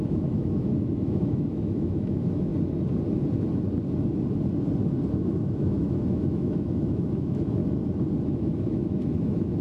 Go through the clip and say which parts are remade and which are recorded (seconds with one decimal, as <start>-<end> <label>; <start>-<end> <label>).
0.0-2.5 remade; 2.5-5.1 recorded; 5.1-7.6 remade; 7.6-8.3 recorded; 8.3-9.6 remade